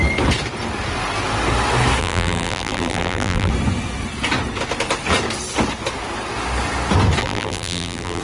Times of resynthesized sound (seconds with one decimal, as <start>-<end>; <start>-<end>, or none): 2.0-3.5; 7.2-8.2